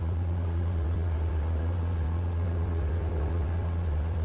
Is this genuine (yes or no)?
no